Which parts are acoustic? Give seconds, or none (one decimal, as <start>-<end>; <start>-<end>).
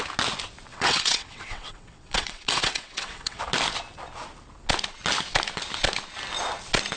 0.0-0.7; 3.4-7.0